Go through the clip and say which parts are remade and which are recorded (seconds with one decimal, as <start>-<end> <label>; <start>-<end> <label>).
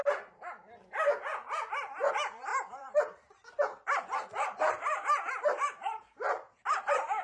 0.0-2.1 recorded; 2.1-7.2 remade